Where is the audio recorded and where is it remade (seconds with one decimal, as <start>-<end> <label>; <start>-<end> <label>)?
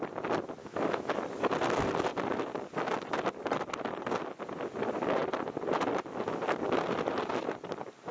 0.0-0.6 recorded; 0.6-1.2 remade; 1.2-8.1 recorded